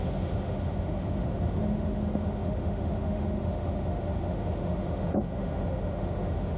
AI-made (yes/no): yes